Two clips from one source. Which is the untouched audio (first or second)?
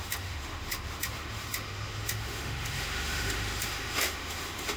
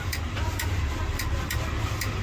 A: second